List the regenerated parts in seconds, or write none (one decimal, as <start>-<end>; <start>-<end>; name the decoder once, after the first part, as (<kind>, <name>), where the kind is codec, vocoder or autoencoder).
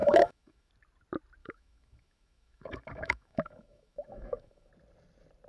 0.0-0.7 (autoencoder, DAC-VAE); 1.4-4.7